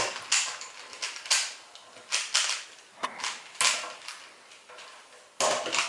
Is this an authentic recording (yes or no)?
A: yes